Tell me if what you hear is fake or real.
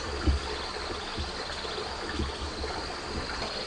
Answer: real